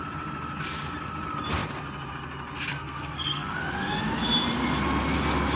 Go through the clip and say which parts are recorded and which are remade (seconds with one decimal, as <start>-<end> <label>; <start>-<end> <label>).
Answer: 0.0-2.7 recorded; 2.7-3.6 remade; 3.6-5.6 recorded